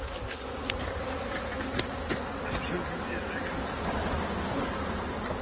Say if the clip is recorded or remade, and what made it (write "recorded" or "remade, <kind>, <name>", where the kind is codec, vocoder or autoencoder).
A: recorded